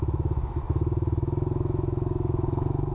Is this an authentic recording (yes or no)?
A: no